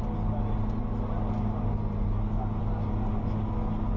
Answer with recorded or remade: recorded